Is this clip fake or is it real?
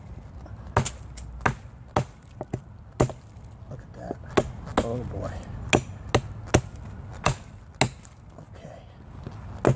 real